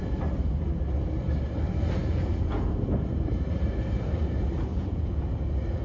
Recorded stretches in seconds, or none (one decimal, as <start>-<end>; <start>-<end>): 0.0-2.0; 2.7-4.7; 5.2-5.8